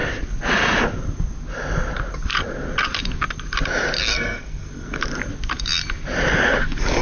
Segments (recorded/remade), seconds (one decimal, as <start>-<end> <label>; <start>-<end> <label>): 0.0-4.1 recorded; 4.1-5.0 remade; 5.0-7.0 recorded